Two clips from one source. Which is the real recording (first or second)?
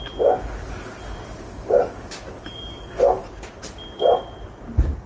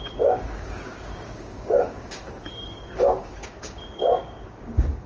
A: first